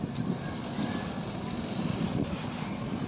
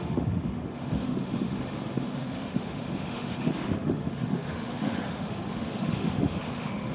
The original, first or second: first